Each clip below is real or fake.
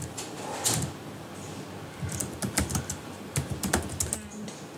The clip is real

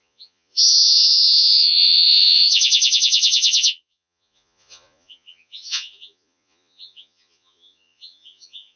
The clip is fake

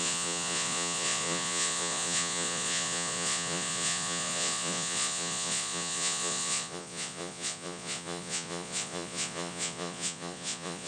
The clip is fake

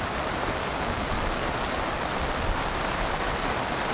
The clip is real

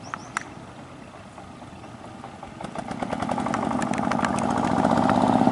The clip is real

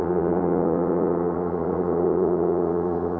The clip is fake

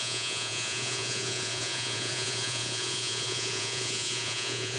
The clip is fake